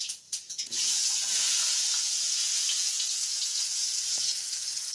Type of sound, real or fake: fake